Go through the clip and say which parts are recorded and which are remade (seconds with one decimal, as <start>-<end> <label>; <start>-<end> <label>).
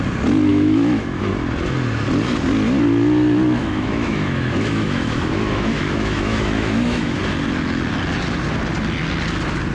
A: 0.0-0.5 recorded; 0.5-1.3 remade; 1.3-3.6 recorded; 3.6-7.2 remade; 7.2-9.7 recorded